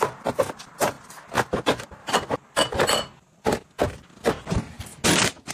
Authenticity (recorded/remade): recorded